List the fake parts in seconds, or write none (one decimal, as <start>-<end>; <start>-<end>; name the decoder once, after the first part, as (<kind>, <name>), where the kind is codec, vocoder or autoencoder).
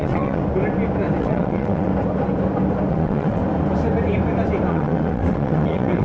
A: 0.0-0.4 (vocoder, WaveNeXt); 1.2-1.9; 2.9-3.4; 4.7-6.0